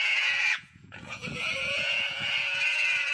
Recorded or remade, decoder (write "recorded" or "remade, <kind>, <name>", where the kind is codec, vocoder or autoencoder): remade, vocoder, Vocos